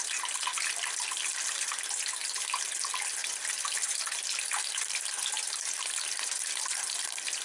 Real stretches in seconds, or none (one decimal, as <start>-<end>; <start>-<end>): 0.0-7.4